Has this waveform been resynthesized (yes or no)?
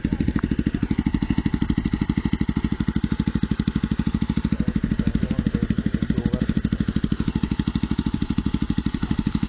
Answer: no